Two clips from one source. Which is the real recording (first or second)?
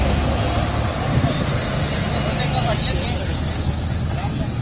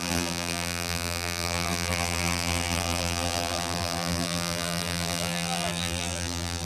first